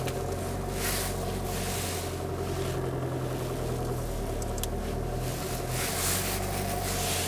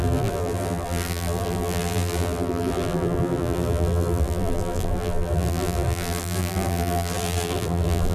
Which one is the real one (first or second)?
first